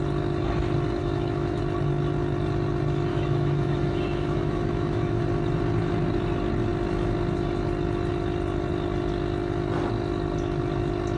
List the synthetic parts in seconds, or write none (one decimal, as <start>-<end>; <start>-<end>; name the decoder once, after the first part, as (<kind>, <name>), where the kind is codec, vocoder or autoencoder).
1.0-1.6 (autoencoder, DAC-VAE); 3.1-5.2